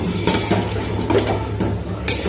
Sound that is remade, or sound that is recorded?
recorded